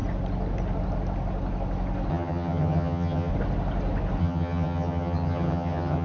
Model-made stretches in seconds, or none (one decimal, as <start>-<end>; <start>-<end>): 2.1-3.3; 4.2-6.0